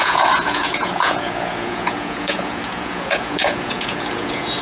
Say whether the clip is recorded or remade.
remade